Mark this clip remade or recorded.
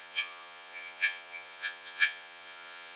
remade